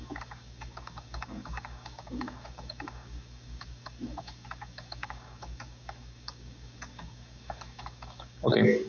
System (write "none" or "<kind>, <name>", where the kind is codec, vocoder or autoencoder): codec, DAC